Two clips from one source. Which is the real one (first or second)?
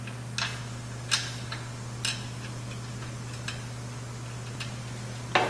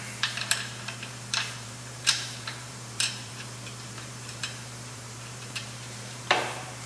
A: first